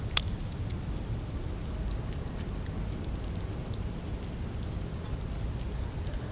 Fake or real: real